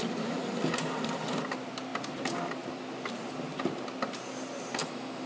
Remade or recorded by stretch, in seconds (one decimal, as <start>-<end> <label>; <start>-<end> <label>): 0.0-4.8 recorded; 4.8-5.3 remade